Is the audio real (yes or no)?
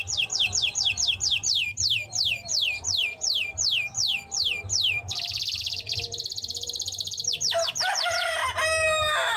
no